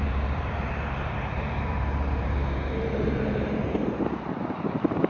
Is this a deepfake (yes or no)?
yes